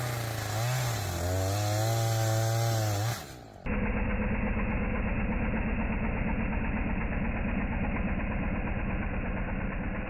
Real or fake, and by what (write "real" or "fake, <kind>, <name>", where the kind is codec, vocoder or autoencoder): real